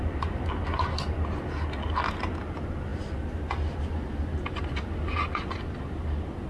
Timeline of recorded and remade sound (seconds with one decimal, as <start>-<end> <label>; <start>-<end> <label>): 0.0-6.5 recorded